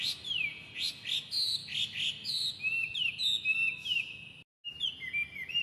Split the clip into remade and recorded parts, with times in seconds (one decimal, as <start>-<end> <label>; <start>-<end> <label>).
0.0-5.6 recorded